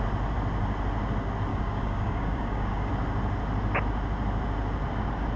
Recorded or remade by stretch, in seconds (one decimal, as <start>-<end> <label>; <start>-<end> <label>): 0.0-1.5 recorded; 1.5-2.9 remade; 2.9-5.4 recorded